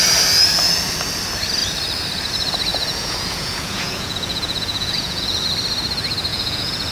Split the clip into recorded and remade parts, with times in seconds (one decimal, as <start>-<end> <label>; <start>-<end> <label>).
0.0-2.7 recorded; 2.7-5.4 remade; 5.4-6.3 recorded; 6.3-6.9 remade